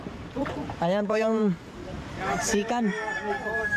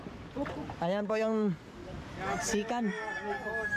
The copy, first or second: first